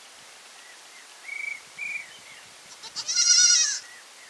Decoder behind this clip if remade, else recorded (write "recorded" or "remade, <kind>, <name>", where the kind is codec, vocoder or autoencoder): remade, vocoder, BigVGAN v2